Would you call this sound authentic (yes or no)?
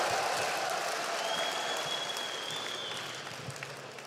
yes